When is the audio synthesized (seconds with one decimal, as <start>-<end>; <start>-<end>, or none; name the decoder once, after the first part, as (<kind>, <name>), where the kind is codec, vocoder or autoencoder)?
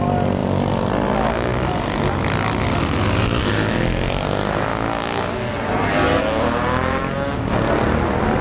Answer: none